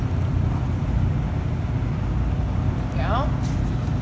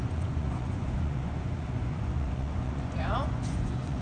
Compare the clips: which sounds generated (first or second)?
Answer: second